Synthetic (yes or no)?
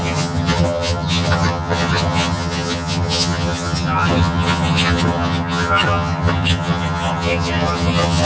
yes